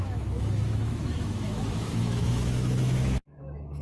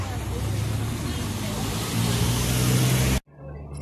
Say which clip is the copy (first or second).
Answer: first